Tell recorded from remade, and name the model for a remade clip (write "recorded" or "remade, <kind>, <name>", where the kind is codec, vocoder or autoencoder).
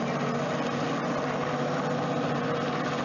recorded